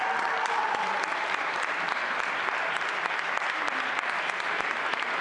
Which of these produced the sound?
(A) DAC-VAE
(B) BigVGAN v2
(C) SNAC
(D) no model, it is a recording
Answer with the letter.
B